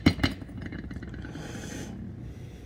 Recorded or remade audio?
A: recorded